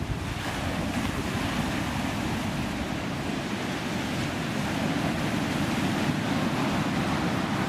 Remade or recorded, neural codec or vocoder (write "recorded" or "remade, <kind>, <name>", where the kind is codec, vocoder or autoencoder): recorded